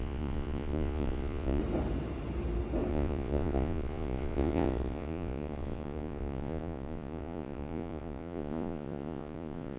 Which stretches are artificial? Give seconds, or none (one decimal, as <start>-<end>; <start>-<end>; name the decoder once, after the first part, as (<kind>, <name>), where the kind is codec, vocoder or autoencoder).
0.0-1.6 (vocoder, Vocos); 2.9-9.8